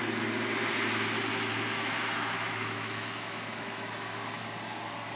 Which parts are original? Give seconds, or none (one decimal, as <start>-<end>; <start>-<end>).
0.0-1.3; 4.4-5.2